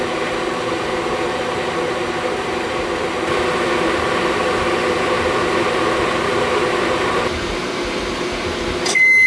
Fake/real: fake